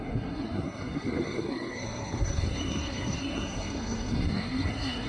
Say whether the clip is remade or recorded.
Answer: remade